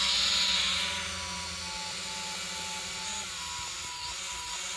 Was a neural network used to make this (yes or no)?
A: no